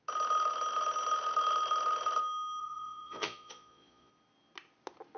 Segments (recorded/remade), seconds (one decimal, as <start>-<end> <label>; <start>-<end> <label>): 0.0-2.6 recorded; 2.6-4.1 remade; 4.1-5.2 recorded